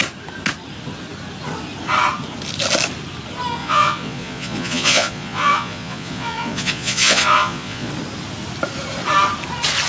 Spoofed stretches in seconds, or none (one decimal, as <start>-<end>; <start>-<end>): 3.6-7.9